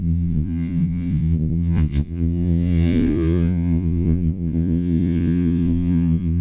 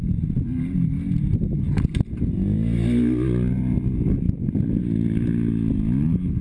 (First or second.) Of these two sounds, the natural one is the second